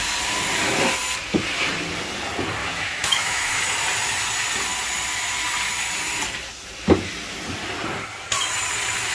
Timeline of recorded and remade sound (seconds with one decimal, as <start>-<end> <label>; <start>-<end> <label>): 0.0-2.6 recorded; 2.6-3.6 remade; 3.6-9.1 recorded